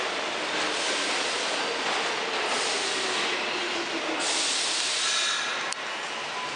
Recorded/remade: recorded